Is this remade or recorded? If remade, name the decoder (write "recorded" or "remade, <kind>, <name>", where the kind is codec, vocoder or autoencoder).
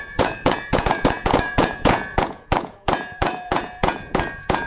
remade, vocoder, Vocos